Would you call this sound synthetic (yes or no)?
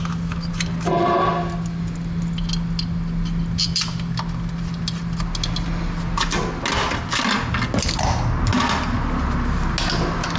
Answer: no